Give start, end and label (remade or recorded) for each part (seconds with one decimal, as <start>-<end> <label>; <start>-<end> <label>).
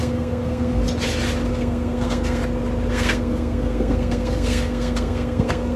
0.0-0.8 remade; 0.8-1.5 recorded; 1.5-2.4 remade; 2.4-2.9 recorded; 2.9-5.8 remade